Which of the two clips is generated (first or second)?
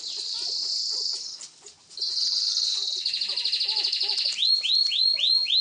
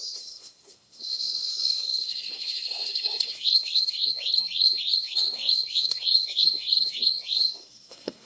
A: second